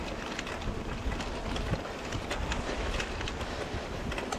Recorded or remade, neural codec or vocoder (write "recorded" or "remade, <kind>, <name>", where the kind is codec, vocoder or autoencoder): recorded